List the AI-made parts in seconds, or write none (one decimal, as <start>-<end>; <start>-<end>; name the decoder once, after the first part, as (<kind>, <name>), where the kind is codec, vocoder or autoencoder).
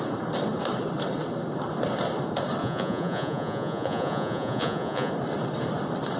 2.6-5.1 (vocoder, Vocos)